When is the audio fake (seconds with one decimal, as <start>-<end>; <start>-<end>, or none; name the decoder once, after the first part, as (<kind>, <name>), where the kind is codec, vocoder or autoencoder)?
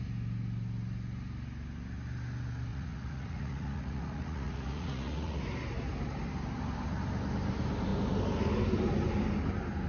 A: 2.7-5.4 (vocoder, Vocos)